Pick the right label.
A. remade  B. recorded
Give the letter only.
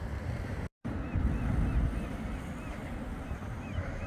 B